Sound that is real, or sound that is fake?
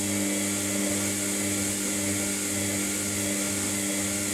real